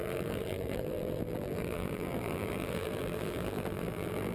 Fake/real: fake